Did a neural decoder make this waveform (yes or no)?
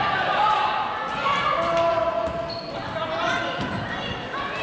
no